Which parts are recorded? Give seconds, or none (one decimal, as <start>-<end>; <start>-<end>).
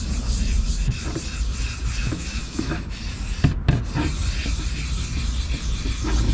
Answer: 0.0-2.0; 3.0-6.3